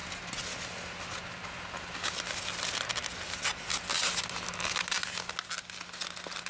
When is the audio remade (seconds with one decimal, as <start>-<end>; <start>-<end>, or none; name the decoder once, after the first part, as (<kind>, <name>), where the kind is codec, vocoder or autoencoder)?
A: none

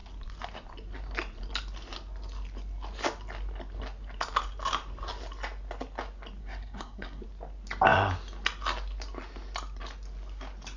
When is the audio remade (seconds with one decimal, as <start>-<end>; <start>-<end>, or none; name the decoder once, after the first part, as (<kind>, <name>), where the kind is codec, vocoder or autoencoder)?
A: 6.4-7.2 (codec, SNAC)

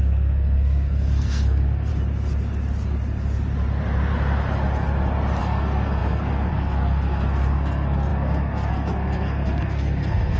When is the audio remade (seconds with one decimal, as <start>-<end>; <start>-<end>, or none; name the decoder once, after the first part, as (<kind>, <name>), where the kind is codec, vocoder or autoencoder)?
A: 0.0-1.9 (codec, SNAC); 5.4-10.4

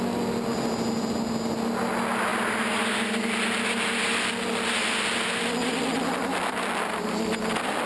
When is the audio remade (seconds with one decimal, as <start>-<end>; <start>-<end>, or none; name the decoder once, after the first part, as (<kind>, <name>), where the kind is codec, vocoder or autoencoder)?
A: none